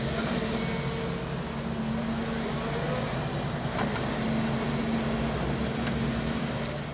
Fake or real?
real